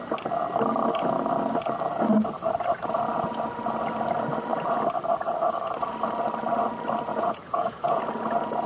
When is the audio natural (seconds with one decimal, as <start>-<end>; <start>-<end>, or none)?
0.0-7.1; 8.0-8.7